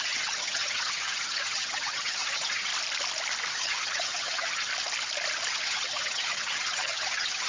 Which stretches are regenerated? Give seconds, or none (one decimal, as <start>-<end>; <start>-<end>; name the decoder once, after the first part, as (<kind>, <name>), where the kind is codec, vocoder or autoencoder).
0.0-2.7 (vocoder, HiFi-GAN); 3.5-4.7; 5.5-7.5